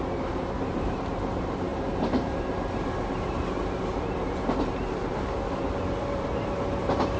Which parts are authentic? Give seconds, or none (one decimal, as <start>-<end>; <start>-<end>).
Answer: none